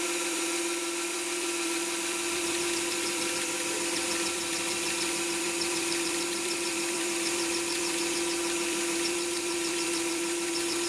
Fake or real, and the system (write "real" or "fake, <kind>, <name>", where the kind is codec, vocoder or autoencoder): fake, vocoder, BigVGAN v2